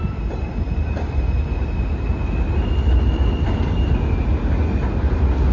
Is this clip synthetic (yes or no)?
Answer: no